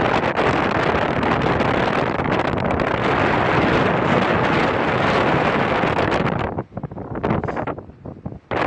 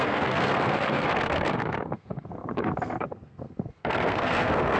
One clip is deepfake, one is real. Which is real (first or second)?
first